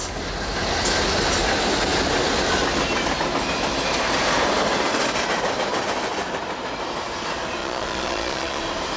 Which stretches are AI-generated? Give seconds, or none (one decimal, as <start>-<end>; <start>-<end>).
7.6-8.6